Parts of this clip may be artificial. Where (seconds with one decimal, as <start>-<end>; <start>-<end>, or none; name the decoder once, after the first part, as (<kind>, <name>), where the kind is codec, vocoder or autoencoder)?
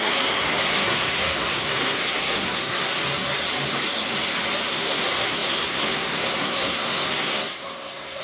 0.0-2.9 (codec, SNAC); 4.7-8.2